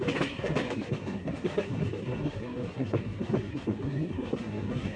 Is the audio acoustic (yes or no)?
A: no